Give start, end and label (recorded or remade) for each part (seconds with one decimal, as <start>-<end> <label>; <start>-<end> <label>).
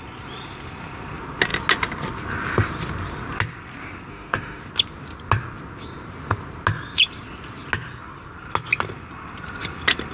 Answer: 0.0-4.1 recorded; 4.1-4.6 remade; 4.6-10.1 recorded